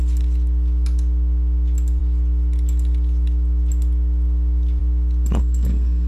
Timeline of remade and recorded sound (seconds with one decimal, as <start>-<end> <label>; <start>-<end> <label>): 0.0-5.4 recorded; 5.4-6.1 remade